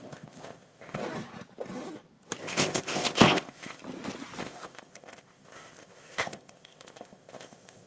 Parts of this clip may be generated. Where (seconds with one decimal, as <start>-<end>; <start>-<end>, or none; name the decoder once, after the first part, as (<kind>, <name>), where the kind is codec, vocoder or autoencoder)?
0.0-1.0 (codec, ZipCodec); 2.4-3.8; 4.4-7.9